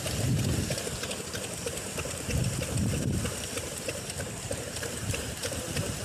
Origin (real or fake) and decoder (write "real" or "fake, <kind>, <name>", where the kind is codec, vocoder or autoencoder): fake, vocoder, BigVGAN v2